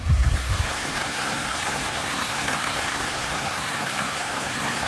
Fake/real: fake